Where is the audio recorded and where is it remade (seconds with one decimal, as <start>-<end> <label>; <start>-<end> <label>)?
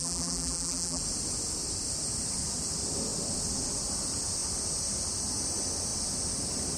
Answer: 0.0-1.0 remade; 1.0-6.8 recorded